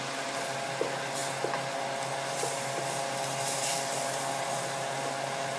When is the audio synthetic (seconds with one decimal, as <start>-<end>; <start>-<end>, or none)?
none